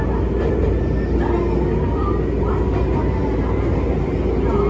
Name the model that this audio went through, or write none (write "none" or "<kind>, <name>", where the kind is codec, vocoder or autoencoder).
none